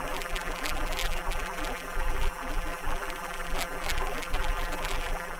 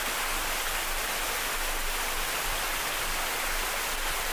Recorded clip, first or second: second